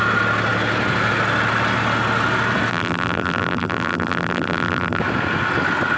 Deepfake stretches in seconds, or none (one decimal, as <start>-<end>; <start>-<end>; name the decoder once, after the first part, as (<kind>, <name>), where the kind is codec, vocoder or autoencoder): 2.7-5.0 (vocoder, BigVGAN v2)